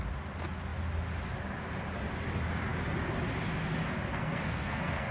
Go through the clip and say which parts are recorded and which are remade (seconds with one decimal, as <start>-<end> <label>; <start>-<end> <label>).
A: 0.0-4.1 recorded; 4.1-5.1 remade